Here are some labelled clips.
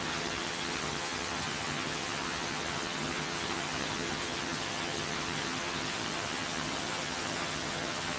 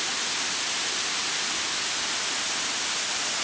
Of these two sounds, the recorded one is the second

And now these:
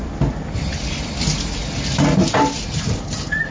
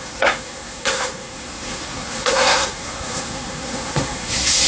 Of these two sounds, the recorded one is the first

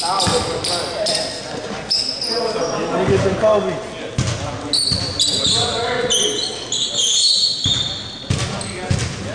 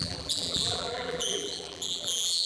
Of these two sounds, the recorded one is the first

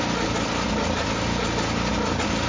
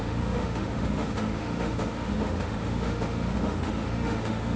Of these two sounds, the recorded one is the first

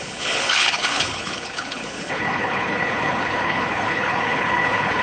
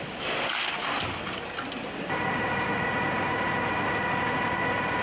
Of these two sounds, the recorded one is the second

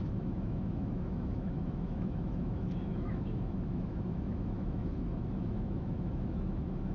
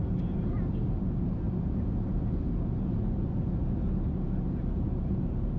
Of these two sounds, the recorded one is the second